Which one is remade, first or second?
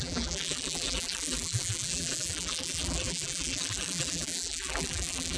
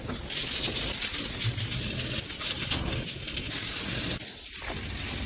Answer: first